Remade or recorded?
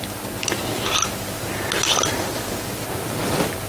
recorded